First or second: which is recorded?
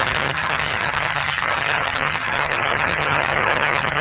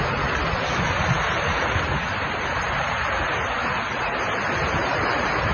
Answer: second